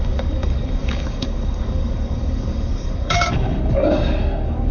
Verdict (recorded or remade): remade